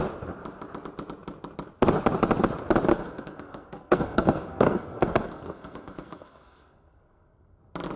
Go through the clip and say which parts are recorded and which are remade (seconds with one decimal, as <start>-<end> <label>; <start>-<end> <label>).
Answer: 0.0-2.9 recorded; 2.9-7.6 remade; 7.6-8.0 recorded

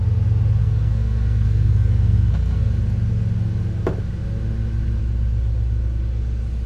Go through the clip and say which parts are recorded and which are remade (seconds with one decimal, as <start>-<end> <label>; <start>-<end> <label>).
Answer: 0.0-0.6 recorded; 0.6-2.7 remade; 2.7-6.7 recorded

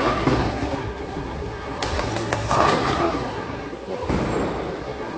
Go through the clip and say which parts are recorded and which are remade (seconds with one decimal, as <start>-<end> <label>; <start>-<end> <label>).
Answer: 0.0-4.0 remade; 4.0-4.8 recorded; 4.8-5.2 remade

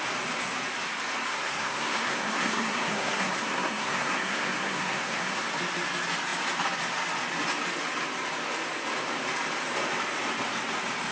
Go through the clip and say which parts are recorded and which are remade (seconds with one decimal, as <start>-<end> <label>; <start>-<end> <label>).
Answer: 0.0-1.3 recorded; 1.3-5.5 remade; 5.5-11.1 recorded

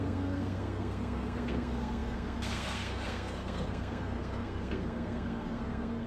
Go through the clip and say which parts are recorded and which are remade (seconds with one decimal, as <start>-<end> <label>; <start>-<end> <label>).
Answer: 0.0-6.1 remade